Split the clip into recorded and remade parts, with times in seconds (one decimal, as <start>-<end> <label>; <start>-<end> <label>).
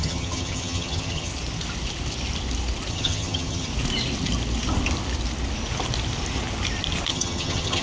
0.0-1.3 remade; 1.3-2.9 recorded; 2.9-3.7 remade; 3.7-7.1 recorded; 7.1-7.8 remade